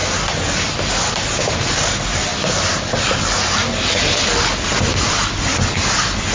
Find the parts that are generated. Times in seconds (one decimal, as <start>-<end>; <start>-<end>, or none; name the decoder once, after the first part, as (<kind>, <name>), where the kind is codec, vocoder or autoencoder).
none